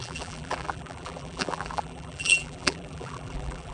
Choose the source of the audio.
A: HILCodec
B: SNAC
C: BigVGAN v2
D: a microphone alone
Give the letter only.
C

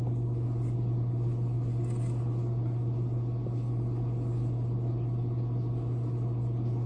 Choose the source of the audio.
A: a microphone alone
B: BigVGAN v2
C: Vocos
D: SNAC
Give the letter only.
A